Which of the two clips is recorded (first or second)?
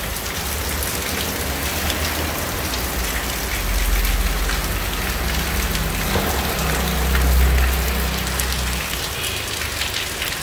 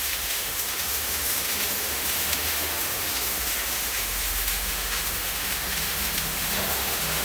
first